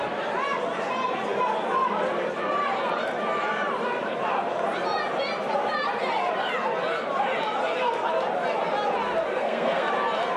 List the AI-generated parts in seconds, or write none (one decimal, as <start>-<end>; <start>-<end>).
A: 9.3-9.9